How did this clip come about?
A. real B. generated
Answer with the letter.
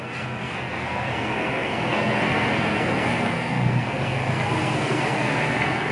B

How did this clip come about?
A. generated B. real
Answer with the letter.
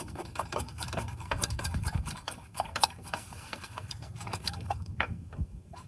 A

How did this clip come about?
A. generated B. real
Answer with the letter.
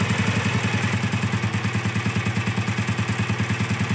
B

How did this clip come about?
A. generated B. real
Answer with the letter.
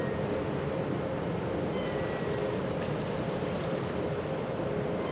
B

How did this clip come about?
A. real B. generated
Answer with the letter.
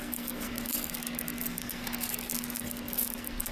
B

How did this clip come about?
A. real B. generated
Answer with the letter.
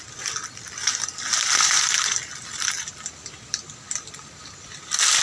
A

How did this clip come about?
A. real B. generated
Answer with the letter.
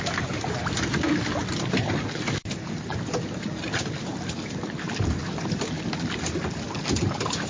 A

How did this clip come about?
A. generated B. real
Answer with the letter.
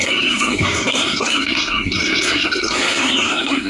A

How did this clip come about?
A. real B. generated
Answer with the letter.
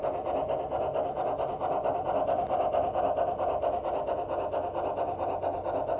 A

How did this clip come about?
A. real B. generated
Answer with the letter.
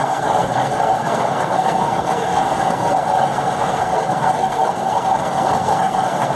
B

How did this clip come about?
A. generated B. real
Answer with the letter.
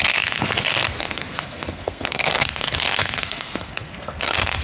A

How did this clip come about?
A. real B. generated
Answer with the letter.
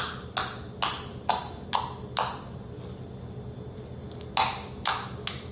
A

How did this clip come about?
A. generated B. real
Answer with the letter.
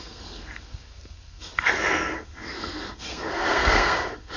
A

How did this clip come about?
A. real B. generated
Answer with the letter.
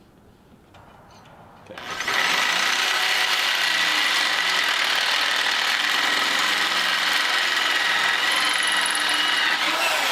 A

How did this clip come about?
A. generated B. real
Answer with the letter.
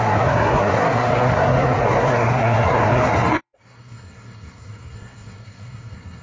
A